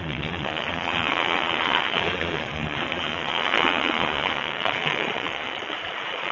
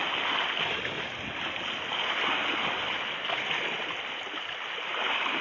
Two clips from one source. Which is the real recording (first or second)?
second